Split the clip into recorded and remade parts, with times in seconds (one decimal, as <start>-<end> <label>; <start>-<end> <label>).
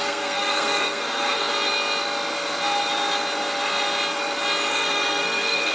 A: 0.0-1.5 remade; 1.5-4.7 recorded; 4.7-5.7 remade